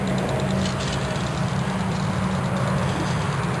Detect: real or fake real